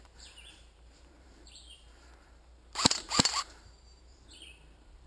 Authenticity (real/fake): fake